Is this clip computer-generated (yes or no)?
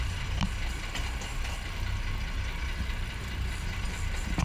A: no